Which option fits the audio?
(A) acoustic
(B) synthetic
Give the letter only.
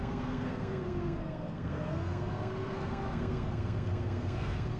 B